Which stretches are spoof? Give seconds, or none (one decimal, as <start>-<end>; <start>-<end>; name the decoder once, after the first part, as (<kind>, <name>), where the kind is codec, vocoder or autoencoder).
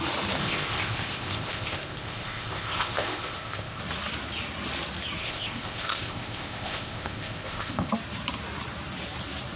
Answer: 0.4-3.8 (codec, ZipCodec); 5.2-7.9